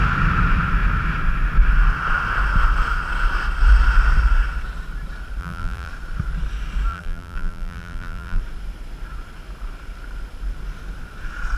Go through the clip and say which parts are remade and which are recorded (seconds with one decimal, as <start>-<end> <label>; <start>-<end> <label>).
0.0-5.4 recorded; 5.4-5.9 remade; 5.9-6.9 recorded; 6.9-8.4 remade; 8.4-11.6 recorded